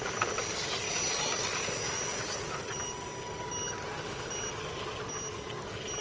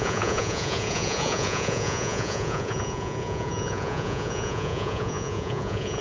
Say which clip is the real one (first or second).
first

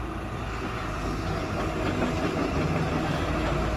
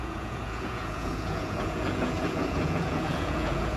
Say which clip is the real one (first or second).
first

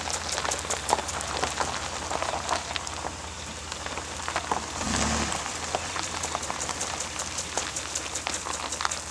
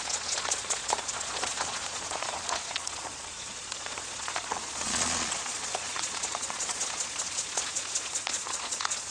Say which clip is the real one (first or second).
first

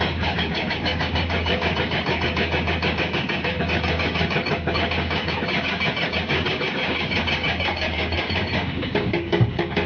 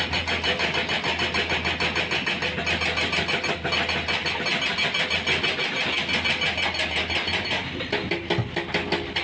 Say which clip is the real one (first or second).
second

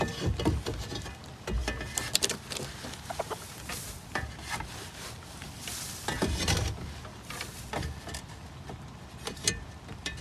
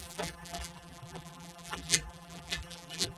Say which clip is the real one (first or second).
first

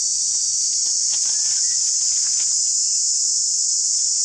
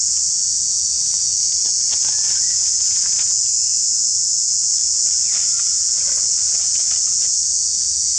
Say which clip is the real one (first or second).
first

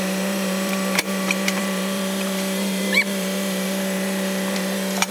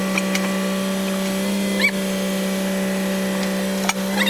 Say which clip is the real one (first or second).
second